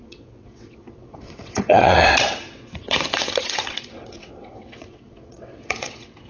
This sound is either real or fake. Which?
fake